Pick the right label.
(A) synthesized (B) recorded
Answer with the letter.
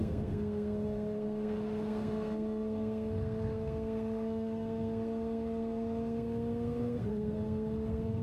A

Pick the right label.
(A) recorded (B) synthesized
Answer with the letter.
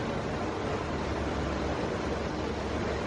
A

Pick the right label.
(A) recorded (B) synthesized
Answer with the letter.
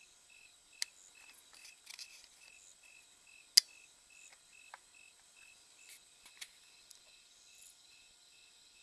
A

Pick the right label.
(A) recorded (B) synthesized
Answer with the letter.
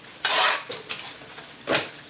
A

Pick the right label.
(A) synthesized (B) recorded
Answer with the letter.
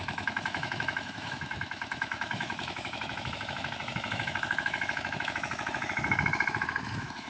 A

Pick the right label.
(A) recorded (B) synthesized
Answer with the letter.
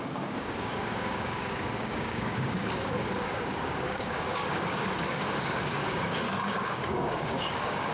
B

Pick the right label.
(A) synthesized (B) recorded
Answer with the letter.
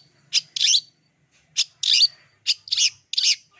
B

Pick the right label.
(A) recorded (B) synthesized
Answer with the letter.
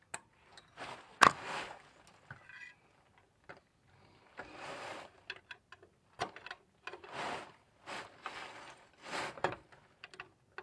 A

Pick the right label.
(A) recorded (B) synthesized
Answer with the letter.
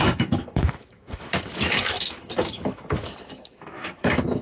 B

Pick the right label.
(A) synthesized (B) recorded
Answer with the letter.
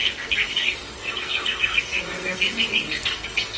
A